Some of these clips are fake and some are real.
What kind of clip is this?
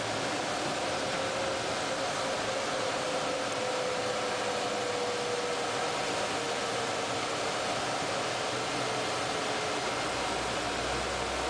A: real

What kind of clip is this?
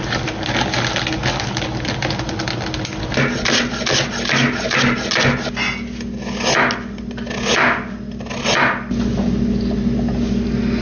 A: real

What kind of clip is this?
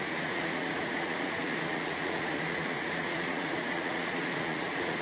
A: fake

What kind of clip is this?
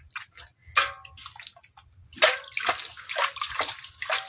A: real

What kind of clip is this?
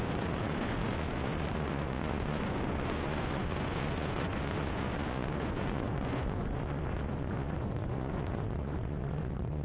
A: fake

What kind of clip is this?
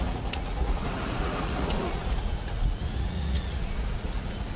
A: fake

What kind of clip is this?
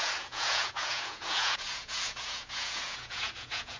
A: fake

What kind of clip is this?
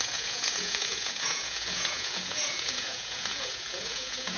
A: fake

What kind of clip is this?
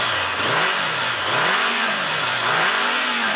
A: fake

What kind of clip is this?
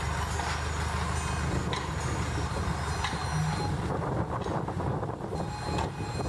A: real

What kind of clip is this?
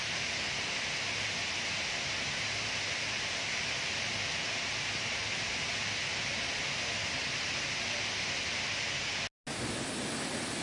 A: real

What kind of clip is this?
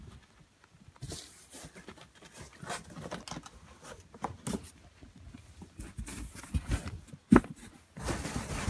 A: real